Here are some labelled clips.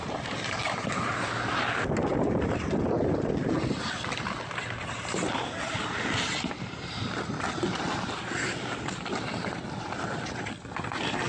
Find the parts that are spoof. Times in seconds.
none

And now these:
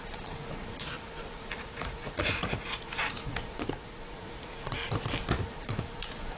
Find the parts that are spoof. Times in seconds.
0.0-4.8 (vocoder, Vocos); 5.4-6.4

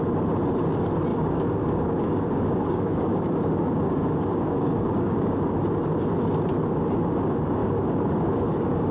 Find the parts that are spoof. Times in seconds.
1.1-5.4 (codec, DAC); 7.6-8.9

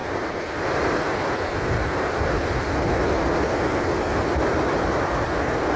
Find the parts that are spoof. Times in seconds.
0.0-3.5 (vocoder, BigVGAN v2)

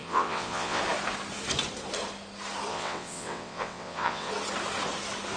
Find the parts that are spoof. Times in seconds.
0.0-0.8 (vocoder, WaveNeXt); 2.7-4.3